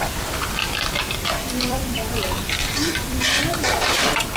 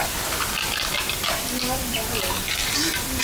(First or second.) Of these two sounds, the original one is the second